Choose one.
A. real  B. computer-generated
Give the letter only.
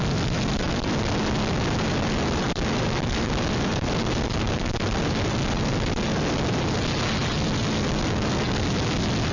A